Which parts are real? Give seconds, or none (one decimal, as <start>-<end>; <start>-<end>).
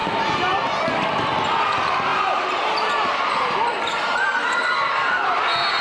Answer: 0.0-5.8